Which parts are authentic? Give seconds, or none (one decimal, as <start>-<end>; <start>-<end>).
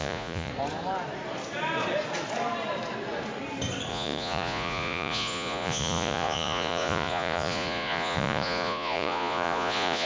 0.5-3.9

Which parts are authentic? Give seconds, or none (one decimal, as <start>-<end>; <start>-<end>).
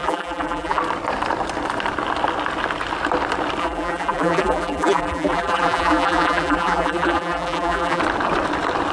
0.8-3.6; 8.0-8.9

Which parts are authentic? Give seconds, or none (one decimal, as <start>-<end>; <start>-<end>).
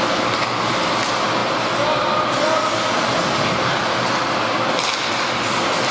0.0-5.9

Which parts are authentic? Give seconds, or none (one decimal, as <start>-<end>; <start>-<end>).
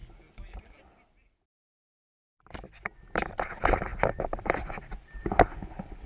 0.0-1.8; 3.3-3.9; 4.7-6.1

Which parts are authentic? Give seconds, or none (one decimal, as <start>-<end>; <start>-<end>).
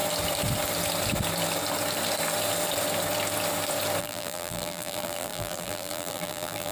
0.0-4.0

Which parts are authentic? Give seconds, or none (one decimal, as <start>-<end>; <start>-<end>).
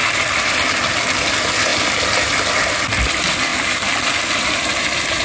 1.7-2.6; 3.5-4.8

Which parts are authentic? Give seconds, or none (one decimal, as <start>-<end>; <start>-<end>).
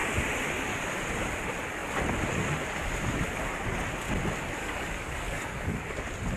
0.0-4.6; 6.0-6.4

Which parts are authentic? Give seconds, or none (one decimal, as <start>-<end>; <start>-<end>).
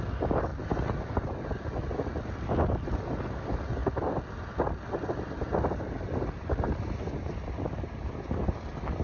0.0-9.0